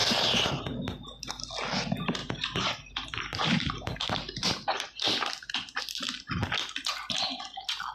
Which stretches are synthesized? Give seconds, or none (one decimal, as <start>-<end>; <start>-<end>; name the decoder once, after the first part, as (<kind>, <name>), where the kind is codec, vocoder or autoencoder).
0.0-0.5 (vocoder, BigVGAN v2); 2.2-5.8